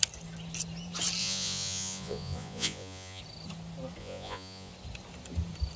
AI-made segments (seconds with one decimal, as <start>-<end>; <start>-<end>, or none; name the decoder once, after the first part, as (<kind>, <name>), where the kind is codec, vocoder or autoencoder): 1.2-3.2 (vocoder, Vocos); 4.0-4.7